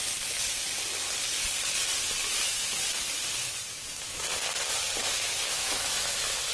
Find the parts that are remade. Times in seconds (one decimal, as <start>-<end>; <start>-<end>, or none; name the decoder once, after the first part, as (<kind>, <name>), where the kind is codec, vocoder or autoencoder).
2.2-2.8 (autoencoder, DAC-VAE); 3.7-4.4; 5.0-6.5